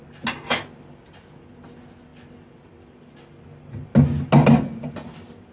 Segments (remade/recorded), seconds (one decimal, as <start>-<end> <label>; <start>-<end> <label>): 0.0-5.5 recorded